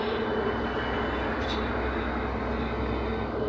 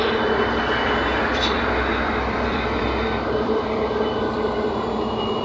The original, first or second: first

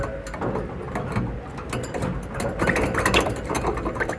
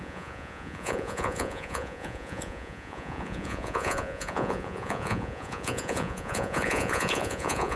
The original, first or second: first